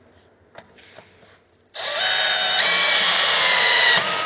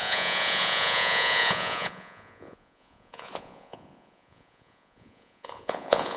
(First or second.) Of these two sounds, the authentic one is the first